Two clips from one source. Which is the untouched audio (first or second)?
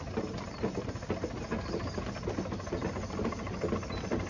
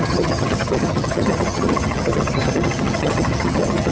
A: first